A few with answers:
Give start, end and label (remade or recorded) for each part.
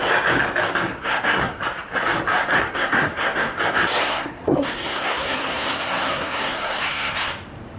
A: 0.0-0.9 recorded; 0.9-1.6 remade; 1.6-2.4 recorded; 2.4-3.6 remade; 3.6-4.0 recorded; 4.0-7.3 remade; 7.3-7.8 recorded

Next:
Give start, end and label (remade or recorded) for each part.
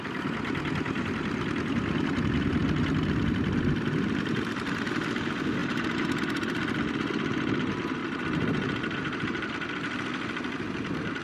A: 0.0-5.6 recorded; 5.6-6.2 remade; 6.2-8.0 recorded; 8.0-9.5 remade; 9.5-11.2 recorded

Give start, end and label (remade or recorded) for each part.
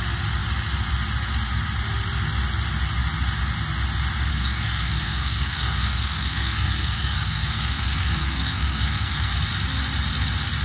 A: 0.0-4.3 recorded; 4.3-9.3 remade; 9.3-10.6 recorded